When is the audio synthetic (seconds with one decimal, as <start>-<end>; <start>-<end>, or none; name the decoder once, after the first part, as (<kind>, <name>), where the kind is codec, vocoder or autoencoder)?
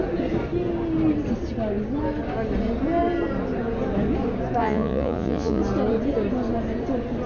4.6-5.6 (vocoder, Vocos)